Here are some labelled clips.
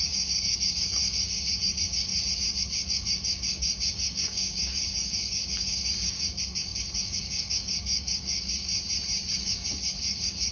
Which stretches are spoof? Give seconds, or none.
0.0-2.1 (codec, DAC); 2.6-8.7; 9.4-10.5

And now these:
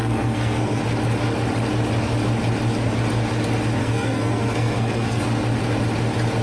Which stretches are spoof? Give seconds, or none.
0.0-0.8 (codec, SNAC); 3.8-5.2

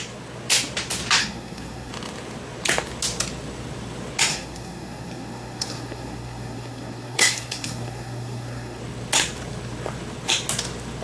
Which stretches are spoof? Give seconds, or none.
1.2-1.9 (codec, SNAC); 4.3-8.8

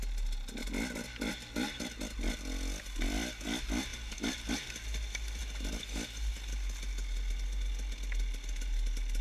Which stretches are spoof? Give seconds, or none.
none